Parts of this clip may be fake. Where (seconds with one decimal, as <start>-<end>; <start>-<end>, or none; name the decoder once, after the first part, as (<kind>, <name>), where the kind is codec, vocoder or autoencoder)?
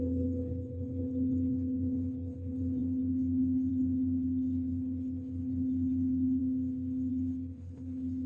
0.0-6.4 (codec, HILCodec); 7.1-8.3